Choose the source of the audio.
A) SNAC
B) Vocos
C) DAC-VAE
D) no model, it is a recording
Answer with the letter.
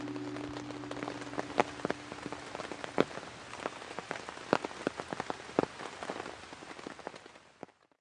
D